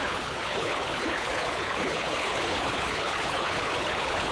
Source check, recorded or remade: remade